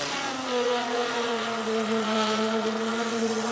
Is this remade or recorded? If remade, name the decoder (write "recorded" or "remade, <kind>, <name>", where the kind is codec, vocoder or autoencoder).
remade, vocoder, Vocos